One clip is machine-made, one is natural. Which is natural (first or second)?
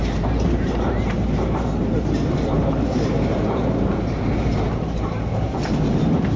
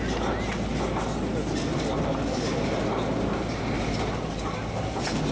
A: second